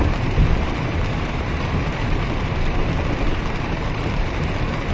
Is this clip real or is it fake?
fake